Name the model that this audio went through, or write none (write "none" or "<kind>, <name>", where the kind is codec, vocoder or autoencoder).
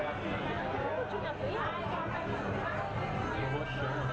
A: none